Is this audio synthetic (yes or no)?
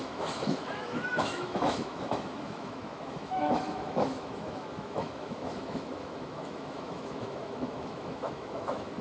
yes